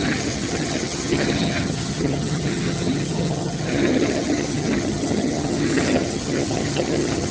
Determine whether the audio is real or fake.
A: fake